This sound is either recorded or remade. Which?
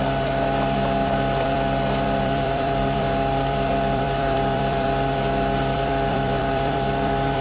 remade